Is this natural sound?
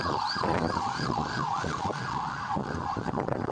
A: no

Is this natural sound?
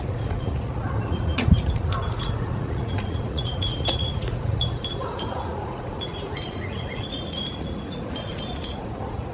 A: no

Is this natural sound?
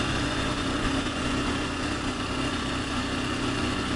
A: no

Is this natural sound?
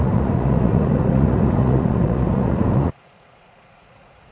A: no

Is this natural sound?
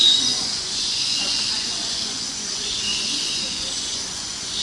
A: no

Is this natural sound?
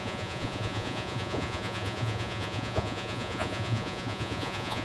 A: no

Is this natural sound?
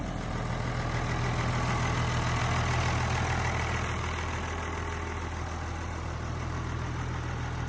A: yes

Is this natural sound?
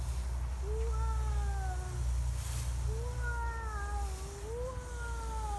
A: yes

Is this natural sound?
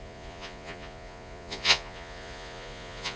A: no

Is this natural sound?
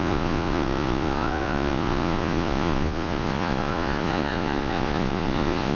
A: no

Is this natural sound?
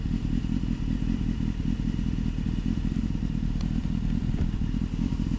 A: yes